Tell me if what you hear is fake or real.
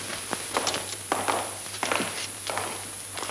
real